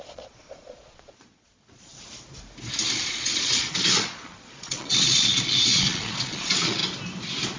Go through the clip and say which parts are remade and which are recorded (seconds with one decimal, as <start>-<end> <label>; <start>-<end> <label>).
0.0-1.9 remade; 1.9-3.0 recorded; 3.0-6.8 remade; 6.8-7.6 recorded